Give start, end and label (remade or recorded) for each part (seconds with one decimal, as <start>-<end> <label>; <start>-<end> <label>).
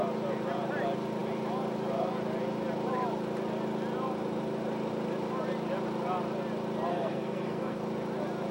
0.0-6.9 recorded; 6.9-7.8 remade; 7.8-8.5 recorded